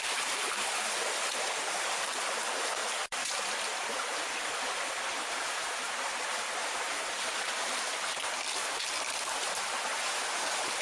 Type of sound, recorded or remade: recorded